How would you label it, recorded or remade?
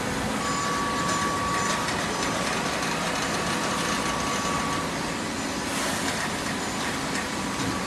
recorded